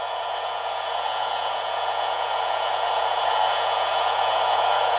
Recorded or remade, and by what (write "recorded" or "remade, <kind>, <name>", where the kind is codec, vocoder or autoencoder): remade, vocoder, Vocos